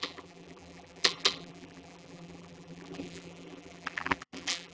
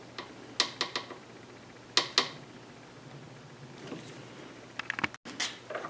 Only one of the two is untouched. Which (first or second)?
second